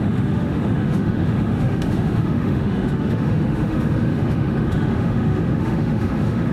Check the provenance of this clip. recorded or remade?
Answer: remade